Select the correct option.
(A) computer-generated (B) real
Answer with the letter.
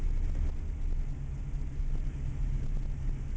B